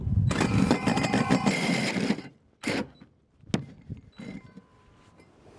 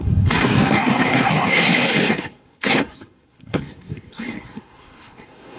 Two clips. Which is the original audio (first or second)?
first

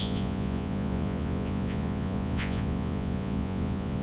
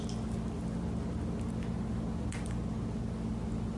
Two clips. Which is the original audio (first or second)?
second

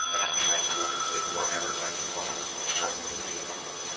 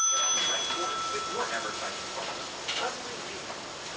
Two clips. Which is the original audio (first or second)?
second